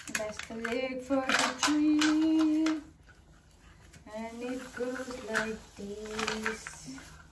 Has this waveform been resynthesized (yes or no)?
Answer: no